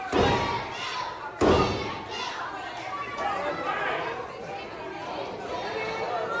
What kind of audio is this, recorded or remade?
recorded